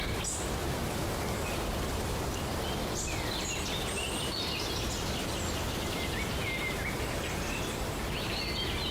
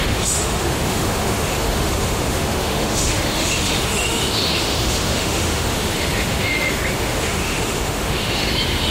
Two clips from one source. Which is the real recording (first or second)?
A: first